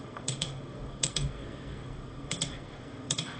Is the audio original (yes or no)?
no